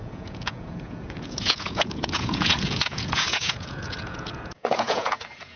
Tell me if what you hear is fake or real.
fake